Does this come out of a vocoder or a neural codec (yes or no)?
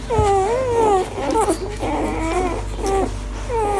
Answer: no